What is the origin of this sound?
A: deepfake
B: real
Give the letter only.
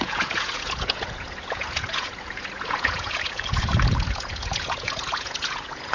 A